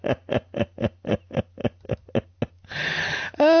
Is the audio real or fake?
real